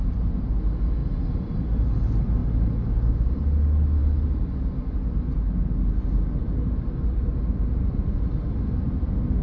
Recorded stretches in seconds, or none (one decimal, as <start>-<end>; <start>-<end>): 0.0-9.4